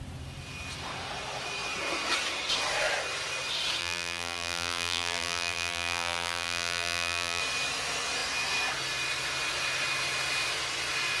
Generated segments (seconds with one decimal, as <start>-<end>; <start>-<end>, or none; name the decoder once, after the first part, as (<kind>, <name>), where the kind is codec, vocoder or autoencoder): 3.8-7.4 (vocoder, BigVGAN v2)